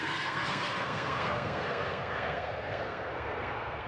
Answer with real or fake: fake